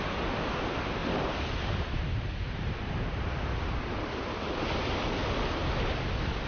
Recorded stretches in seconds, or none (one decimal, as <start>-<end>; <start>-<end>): 0.0-1.0; 4.0-6.5